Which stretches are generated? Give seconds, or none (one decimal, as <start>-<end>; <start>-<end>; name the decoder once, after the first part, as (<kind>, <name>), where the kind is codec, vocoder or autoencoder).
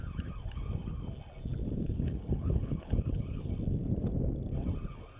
1.6-3.5 (codec, HILCodec)